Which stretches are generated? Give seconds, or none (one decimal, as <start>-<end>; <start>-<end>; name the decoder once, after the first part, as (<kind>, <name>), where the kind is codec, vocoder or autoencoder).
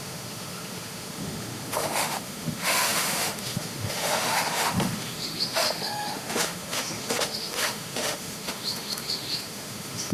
0.0-10.1 (autoencoder, DAC-VAE)